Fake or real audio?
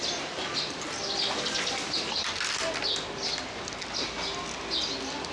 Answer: real